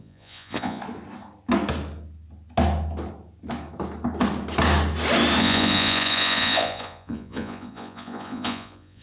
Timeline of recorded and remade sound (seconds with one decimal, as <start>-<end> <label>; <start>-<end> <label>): 0.0-0.8 remade; 0.8-5.4 recorded; 5.4-9.0 remade